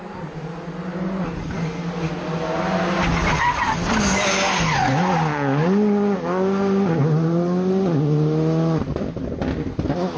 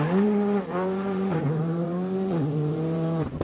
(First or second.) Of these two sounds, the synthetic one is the second